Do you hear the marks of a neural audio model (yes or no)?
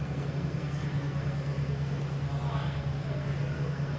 yes